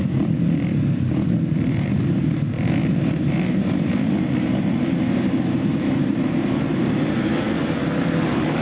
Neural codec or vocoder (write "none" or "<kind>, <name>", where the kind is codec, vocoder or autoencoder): vocoder, BigVGAN v2